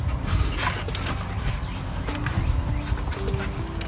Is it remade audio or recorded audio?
recorded